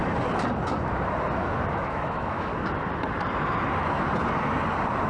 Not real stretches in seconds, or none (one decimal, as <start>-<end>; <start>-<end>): 1.7-2.5